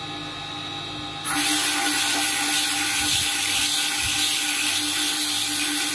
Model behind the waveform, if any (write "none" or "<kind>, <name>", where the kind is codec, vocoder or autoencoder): none